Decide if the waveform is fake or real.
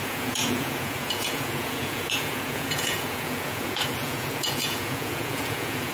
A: fake